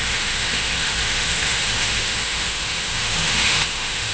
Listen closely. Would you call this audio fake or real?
fake